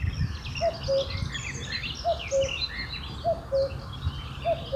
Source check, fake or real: real